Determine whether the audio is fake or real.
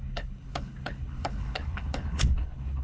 fake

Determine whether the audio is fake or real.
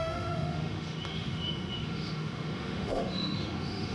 fake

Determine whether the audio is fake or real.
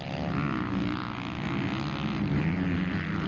real